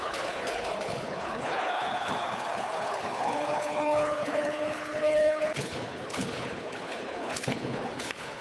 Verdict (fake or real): fake